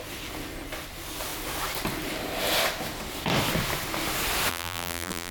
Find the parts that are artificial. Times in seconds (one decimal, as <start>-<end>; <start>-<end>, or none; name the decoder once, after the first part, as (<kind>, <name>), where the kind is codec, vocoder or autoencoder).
4.5-5.3 (vocoder, BigVGAN v2)